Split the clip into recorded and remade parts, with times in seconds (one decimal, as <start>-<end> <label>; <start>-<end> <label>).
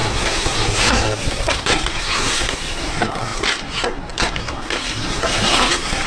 0.0-6.1 remade